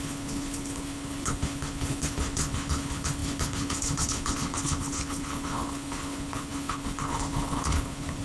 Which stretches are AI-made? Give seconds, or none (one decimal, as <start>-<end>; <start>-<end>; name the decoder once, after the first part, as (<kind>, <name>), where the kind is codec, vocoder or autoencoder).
0.0-8.2 (codec, HILCodec)